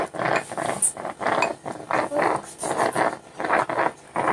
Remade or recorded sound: recorded